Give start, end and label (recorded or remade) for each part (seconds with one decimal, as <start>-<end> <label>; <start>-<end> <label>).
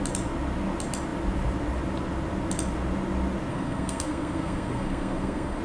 0.0-3.5 recorded; 3.5-5.6 remade